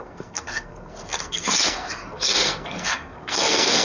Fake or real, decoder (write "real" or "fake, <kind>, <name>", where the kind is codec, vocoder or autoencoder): fake, codec, SNAC